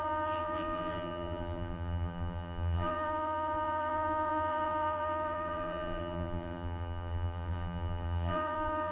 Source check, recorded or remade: remade